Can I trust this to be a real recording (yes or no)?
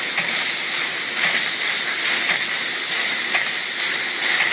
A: yes